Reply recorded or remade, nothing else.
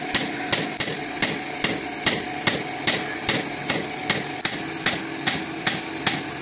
recorded